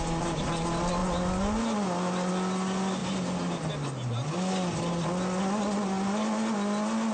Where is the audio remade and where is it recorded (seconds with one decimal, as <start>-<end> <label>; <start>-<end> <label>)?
0.0-7.1 recorded

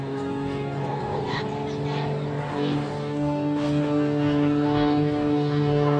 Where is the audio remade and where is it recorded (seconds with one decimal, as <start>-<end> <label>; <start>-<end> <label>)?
0.0-1.4 remade; 1.4-2.5 recorded; 2.5-6.0 remade

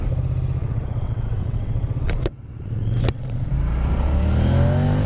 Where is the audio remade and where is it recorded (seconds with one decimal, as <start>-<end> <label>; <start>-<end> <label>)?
0.0-0.6 recorded; 0.6-3.5 remade; 3.5-5.1 recorded

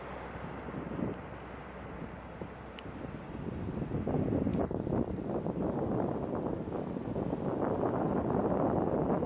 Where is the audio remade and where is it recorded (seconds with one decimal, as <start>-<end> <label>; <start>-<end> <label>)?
0.0-9.3 recorded

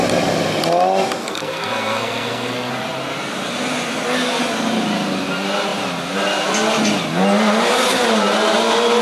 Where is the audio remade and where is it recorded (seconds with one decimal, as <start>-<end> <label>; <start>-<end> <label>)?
0.0-1.2 recorded; 1.2-2.7 remade; 2.7-9.0 recorded

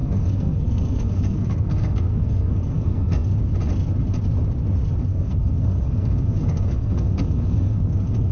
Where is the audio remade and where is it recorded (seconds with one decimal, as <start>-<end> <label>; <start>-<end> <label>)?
0.0-3.3 remade; 3.3-5.1 recorded; 5.1-8.3 remade